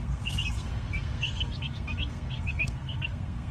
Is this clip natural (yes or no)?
no